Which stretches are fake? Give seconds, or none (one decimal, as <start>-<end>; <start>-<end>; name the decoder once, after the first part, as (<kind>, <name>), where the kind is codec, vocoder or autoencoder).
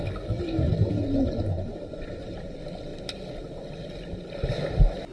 none